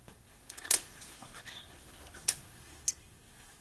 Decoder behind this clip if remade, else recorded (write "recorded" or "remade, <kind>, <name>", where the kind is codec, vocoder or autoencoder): remade, codec, SNAC